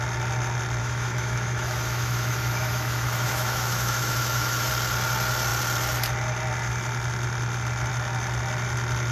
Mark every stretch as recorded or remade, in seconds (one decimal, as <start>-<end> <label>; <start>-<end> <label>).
0.0-0.8 recorded; 0.8-4.7 remade; 4.7-9.1 recorded

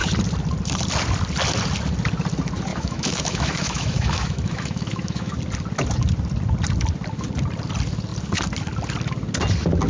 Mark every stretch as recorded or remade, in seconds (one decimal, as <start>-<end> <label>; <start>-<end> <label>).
0.0-2.7 recorded; 2.7-5.4 remade; 5.4-9.9 recorded

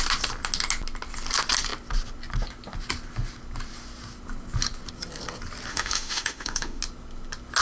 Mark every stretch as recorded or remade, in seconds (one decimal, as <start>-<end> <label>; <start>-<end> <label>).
0.0-5.7 recorded; 5.7-6.8 remade; 6.8-7.6 recorded